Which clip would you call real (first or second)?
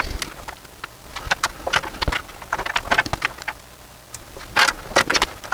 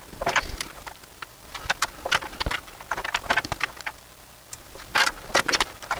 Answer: first